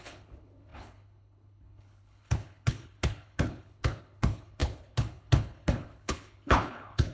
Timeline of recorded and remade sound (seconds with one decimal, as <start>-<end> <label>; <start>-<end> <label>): 0.0-7.1 remade